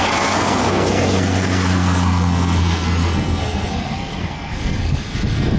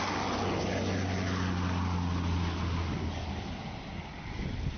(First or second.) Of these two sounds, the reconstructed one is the first